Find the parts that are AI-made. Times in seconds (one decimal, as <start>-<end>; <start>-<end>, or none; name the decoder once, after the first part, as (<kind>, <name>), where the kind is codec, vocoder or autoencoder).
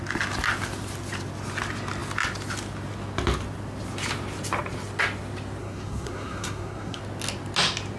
5.6-7.0 (codec, SNAC)